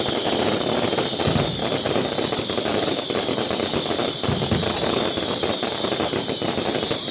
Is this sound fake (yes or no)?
yes